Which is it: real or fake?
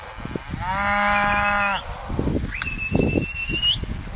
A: real